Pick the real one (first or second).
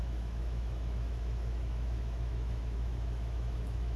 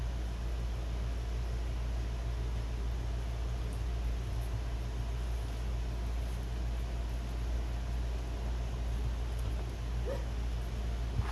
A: second